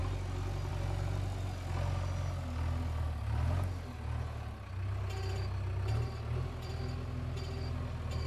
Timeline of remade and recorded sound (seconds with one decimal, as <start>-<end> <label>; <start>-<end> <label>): 0.0-8.3 recorded